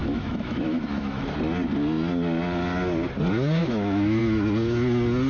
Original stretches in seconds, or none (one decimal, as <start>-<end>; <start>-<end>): 1.2-3.6; 4.2-5.3